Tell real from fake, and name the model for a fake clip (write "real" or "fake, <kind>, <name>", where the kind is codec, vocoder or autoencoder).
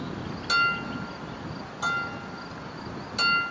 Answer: real